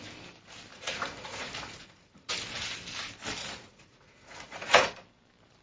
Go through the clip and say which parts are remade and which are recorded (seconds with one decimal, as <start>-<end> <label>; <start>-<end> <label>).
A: 0.0-0.7 recorded; 0.7-2.3 remade; 2.3-3.4 recorded; 3.4-4.9 remade; 4.9-5.6 recorded